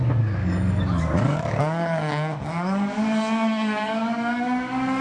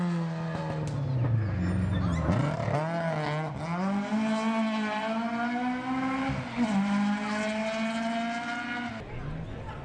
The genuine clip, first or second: second